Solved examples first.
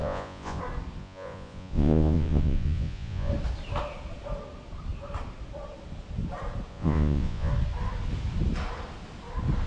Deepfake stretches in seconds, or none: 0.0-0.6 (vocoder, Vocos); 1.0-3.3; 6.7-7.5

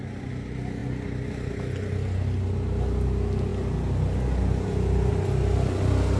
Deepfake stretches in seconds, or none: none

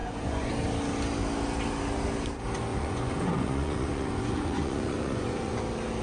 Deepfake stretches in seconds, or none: 0.0-0.5 (vocoder, Vocos); 2.7-5.6

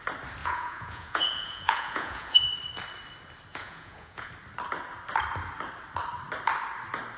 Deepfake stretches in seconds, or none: 0.4-2.5 (vocoder, Vocos); 3.5-4.3